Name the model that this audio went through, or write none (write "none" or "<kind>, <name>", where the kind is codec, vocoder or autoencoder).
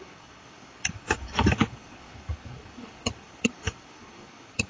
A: codec, DAC